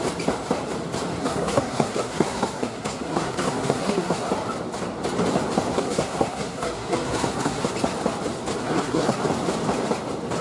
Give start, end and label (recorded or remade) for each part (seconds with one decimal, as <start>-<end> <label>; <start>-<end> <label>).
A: 0.0-1.2 recorded; 1.2-4.3 remade; 4.3-5.7 recorded; 5.7-7.7 remade; 7.7-8.6 recorded; 8.6-9.2 remade; 9.2-10.4 recorded